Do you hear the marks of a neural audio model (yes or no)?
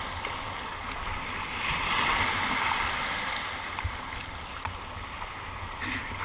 no